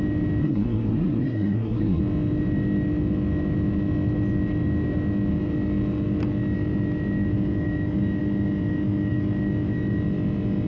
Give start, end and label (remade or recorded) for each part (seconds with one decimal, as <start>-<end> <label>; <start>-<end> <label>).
0.0-0.4 recorded; 0.4-2.0 remade; 2.0-10.7 recorded